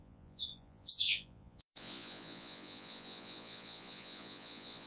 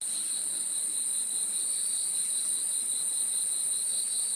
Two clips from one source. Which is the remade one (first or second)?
first